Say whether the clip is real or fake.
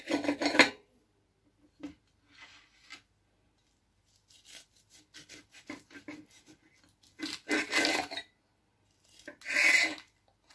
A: real